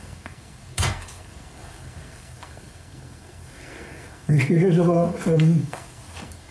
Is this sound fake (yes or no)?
yes